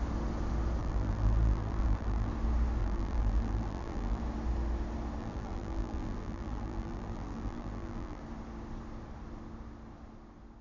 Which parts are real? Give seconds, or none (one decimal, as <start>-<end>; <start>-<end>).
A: 0.0-0.8; 2.3-2.8; 4.2-5.2; 8.2-10.6